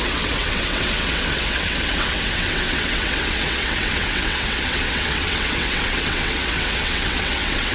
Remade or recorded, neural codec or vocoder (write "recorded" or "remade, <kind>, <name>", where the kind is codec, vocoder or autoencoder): remade, vocoder, WaveNeXt